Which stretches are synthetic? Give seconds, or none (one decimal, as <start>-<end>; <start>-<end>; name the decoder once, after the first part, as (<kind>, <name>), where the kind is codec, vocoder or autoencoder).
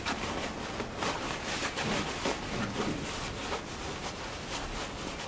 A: none